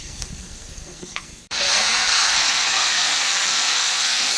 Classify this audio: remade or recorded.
remade